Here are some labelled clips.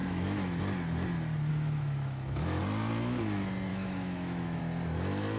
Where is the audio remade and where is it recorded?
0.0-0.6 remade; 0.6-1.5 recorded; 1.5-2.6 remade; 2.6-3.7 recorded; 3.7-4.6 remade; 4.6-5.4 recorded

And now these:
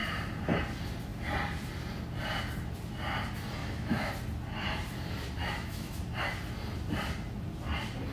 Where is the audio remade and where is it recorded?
0.0-3.6 recorded; 3.6-4.1 remade; 4.1-5.4 recorded; 5.4-6.0 remade; 6.0-8.1 recorded